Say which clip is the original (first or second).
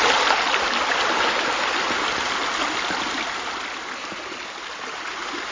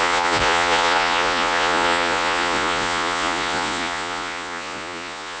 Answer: first